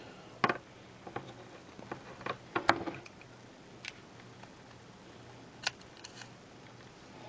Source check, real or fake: real